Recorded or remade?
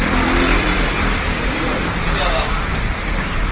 remade